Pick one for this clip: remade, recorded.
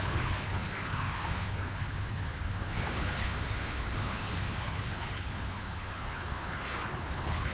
remade